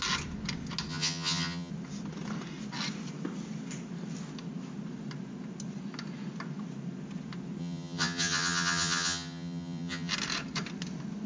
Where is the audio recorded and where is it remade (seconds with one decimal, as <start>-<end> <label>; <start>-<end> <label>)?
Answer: 0.0-0.9 recorded; 0.9-1.7 remade; 1.7-7.6 recorded; 7.6-10.1 remade; 10.1-11.3 recorded